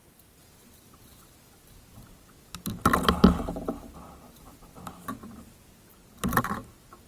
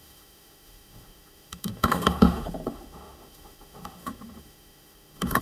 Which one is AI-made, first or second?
second